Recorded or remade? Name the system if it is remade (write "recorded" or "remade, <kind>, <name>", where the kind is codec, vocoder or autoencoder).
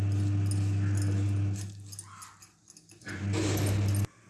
recorded